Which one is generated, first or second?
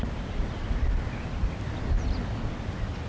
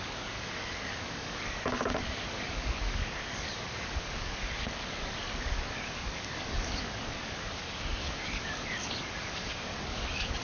second